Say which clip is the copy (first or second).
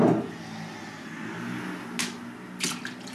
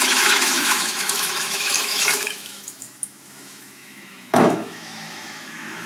second